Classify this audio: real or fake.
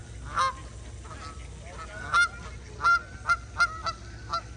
real